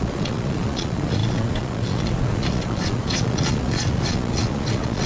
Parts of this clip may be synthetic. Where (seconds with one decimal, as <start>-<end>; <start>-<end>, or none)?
0.0-5.1